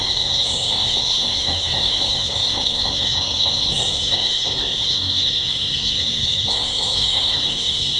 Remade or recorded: remade